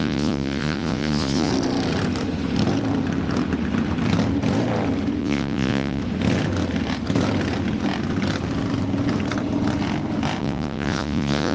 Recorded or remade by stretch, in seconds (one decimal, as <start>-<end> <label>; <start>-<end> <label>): 0.0-1.5 remade; 1.5-5.2 recorded; 5.2-6.0 remade; 6.0-10.4 recorded; 10.4-11.5 remade